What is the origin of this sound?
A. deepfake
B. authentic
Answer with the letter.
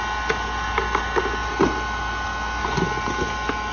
B